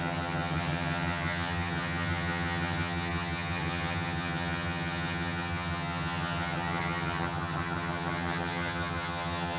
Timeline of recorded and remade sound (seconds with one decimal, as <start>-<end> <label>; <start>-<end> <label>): 0.0-9.6 remade